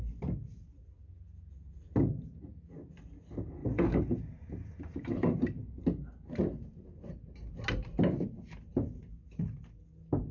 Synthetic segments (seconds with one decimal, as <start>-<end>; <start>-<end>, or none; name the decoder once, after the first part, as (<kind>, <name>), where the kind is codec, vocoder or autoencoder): 3.6-5.7 (vocoder, BigVGAN v2); 6.4-7.0